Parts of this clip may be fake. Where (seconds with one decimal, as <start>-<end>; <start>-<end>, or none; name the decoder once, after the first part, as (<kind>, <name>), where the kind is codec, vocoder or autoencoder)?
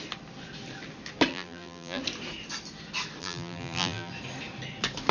1.3-2.0 (vocoder, BigVGAN v2); 3.2-4.1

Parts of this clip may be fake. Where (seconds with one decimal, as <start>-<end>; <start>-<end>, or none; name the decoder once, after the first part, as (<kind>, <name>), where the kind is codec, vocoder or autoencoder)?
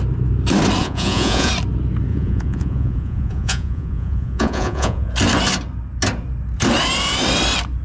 0.8-1.5 (vocoder, Vocos); 2.1-5.1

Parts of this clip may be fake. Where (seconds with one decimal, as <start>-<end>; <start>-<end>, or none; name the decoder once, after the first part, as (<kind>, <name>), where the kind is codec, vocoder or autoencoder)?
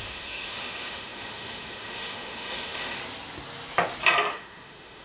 0.0-3.0 (autoencoder, DAC-VAE); 4.3-5.0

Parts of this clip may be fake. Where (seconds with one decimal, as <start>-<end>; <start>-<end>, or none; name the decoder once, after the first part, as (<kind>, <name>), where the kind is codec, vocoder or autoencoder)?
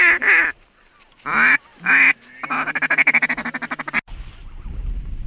none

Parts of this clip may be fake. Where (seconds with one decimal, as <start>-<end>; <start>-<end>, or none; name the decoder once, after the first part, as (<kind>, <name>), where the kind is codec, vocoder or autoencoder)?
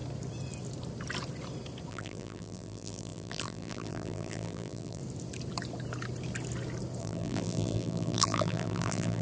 1.9-5.0 (vocoder, BigVGAN v2); 7.0-9.2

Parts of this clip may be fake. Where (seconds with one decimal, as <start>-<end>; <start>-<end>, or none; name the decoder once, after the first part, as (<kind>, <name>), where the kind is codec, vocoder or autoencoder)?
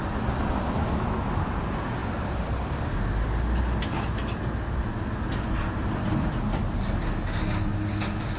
none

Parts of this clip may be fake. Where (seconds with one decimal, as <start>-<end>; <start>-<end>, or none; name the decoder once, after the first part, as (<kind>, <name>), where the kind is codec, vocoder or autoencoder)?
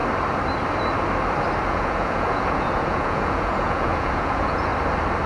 1.7-4.7 (vocoder, Vocos)